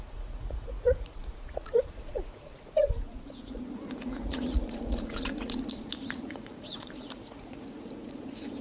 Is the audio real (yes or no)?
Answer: no